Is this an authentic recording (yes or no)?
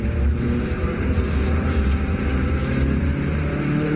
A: no